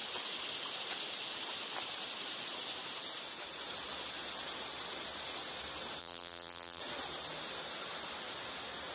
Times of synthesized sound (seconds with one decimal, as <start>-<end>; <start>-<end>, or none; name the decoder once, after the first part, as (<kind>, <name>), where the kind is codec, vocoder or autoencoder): 6.0-6.8 (vocoder, BigVGAN v2)